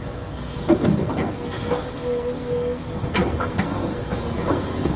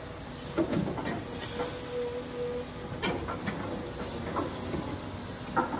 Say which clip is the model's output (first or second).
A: first